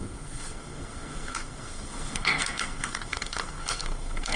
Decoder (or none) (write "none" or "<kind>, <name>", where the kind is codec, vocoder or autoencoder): codec, SNAC